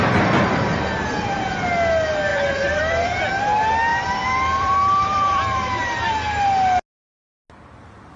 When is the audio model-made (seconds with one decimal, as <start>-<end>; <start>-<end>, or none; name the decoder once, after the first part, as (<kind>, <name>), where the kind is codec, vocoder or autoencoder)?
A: 2.3-3.4 (vocoder, BigVGAN v2); 3.9-6.1